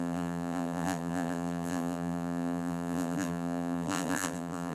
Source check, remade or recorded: remade